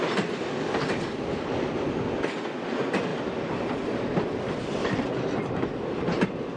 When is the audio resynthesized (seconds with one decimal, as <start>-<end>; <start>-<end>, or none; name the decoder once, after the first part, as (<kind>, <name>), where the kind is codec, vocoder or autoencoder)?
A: 3.1-5.4 (vocoder, BigVGAN v2)